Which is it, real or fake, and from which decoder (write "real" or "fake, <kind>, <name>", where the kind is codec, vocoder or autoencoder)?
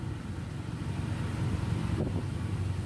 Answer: real